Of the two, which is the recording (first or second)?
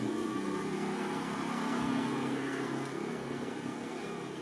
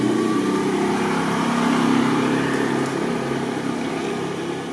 second